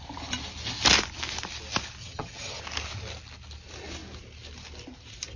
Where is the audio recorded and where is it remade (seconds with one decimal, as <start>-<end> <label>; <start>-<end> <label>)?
0.0-2.0 recorded; 2.0-2.6 remade; 2.6-5.4 recorded